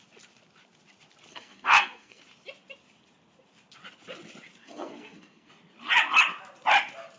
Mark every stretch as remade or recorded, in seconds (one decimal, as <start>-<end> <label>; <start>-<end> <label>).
0.0-1.3 recorded; 1.3-2.2 remade; 2.2-4.6 recorded; 4.6-5.5 remade; 5.5-7.2 recorded